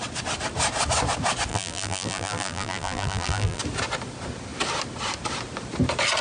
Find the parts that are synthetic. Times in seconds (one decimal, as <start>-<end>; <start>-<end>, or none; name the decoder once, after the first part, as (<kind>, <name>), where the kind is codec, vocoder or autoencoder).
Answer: 1.5-3.6 (vocoder, BigVGAN v2)